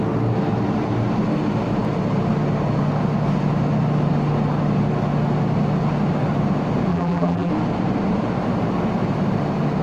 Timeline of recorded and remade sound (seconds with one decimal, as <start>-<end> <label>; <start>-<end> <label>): 0.0-6.9 recorded; 6.9-7.5 remade; 7.5-9.8 recorded